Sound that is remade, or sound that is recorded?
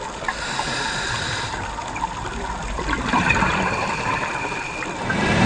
remade